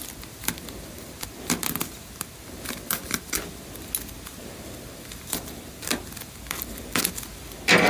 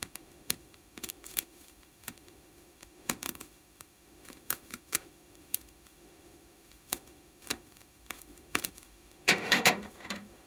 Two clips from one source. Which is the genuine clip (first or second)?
first